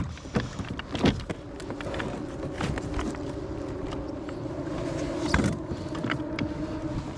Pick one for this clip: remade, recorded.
recorded